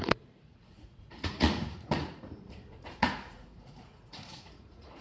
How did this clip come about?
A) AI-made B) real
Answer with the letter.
A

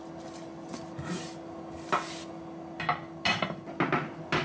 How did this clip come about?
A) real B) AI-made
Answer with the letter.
A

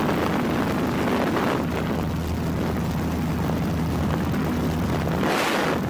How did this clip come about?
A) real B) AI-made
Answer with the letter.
A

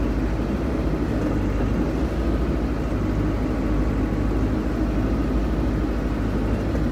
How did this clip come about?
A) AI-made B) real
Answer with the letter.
B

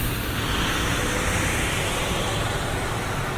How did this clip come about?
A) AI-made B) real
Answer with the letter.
B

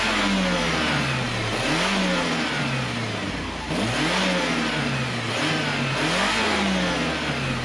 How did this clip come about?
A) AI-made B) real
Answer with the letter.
B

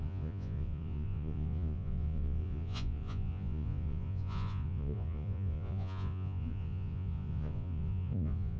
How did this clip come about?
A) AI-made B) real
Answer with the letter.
A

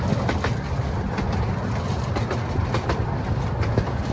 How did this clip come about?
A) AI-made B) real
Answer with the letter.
B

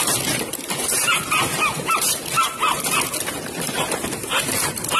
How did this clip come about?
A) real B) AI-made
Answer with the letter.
A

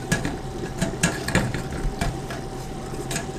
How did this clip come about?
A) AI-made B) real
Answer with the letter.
B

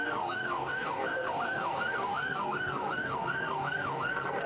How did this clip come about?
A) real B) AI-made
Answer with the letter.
B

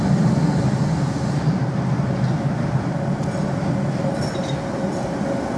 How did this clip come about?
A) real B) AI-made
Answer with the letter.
A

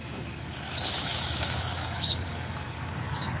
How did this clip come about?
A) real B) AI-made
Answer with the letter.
B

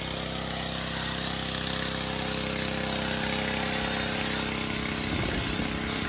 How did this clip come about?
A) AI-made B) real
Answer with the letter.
B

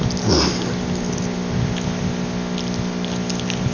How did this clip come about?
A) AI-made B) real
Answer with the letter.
B